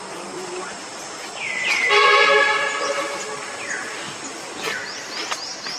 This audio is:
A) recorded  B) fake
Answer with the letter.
A